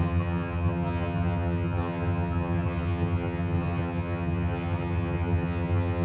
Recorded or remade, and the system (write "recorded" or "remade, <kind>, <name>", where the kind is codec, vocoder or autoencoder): remade, vocoder, HiFi-GAN